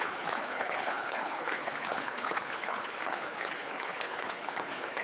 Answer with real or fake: fake